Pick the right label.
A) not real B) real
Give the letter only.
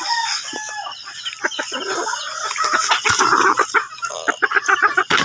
B